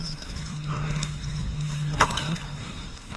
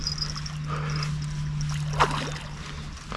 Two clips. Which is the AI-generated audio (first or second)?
first